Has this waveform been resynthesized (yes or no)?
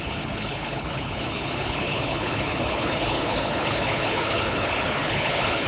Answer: yes